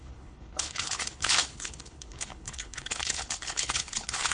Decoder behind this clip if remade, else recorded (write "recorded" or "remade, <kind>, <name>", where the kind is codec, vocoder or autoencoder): remade, codec, HILCodec